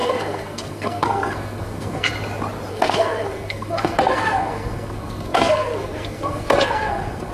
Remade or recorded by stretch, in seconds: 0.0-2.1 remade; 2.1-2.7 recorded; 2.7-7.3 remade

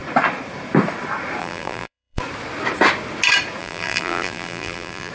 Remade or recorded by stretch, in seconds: 0.0-1.4 recorded; 1.4-2.2 remade; 2.2-3.6 recorded; 3.6-5.1 remade

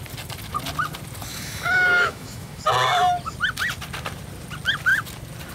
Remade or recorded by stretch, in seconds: 0.0-1.3 recorded; 1.3-2.6 remade; 2.6-5.5 recorded